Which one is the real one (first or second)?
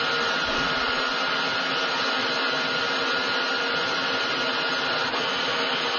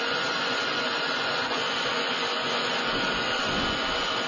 first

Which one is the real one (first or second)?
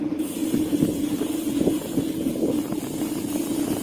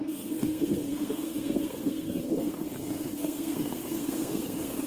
first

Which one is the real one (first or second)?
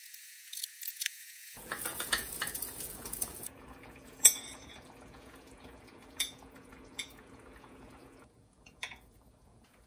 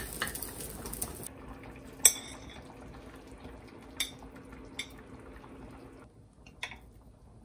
second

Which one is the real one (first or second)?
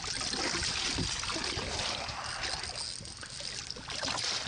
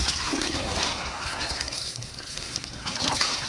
first